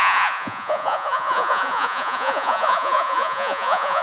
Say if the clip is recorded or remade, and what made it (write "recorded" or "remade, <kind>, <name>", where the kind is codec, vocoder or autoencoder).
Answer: remade, vocoder, Vocos